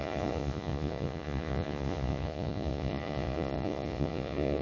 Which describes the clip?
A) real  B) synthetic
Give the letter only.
B